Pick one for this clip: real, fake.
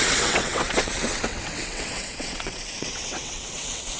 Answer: fake